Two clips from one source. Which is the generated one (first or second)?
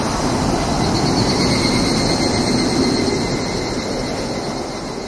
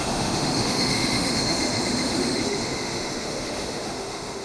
second